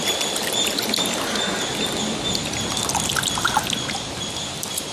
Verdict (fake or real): real